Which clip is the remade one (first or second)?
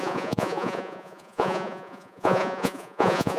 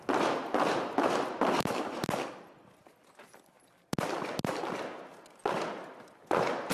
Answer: first